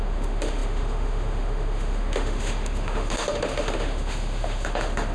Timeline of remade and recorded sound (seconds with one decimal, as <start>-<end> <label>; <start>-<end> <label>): 0.0-5.1 remade